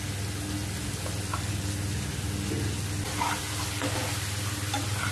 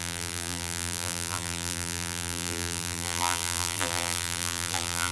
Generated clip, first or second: second